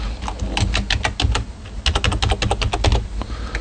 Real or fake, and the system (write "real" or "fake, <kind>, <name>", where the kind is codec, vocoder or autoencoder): real